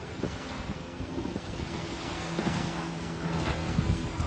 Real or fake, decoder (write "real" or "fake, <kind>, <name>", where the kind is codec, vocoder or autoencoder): fake, codec, SNAC